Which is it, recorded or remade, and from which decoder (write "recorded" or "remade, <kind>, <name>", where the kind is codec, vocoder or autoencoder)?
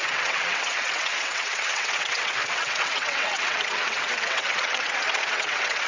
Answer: remade, vocoder, WaveNeXt